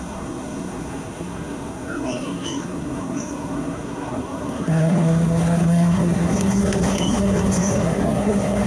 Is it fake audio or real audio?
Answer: fake